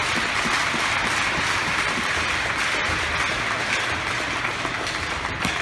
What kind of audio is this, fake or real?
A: real